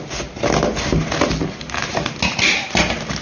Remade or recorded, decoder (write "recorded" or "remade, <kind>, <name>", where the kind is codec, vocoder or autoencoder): recorded